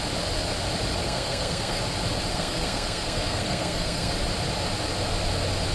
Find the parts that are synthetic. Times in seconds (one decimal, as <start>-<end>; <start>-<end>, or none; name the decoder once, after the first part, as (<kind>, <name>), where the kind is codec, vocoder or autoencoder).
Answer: 1.0-1.8 (codec, SNAC); 2.3-4.1